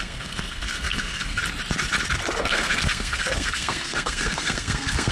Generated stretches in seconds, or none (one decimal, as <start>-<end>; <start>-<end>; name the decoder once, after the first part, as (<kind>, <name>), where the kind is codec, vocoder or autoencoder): 0.0-1.4 (codec, SNAC); 2.4-5.1